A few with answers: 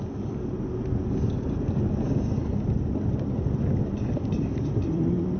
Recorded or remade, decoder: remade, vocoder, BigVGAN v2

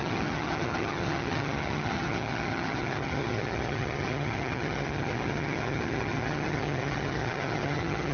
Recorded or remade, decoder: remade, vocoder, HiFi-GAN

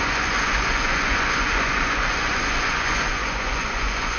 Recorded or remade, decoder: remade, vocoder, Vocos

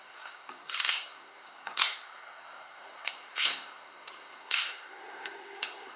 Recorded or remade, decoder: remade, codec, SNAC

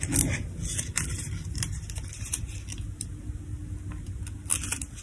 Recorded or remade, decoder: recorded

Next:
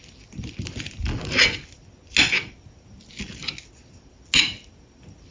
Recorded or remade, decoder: recorded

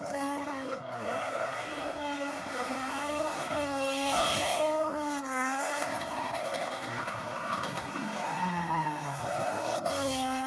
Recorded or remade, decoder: remade, codec, SNAC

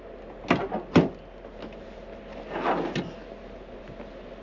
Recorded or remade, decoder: recorded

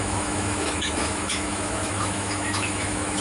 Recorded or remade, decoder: remade, autoencoder, DAC-VAE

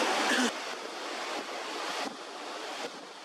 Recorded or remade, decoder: recorded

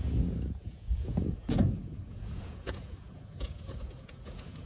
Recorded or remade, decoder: remade, vocoder, Vocos